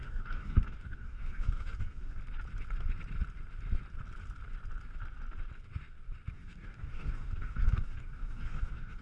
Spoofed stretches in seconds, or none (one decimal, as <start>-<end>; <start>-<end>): 0.0-2.2; 6.3-9.0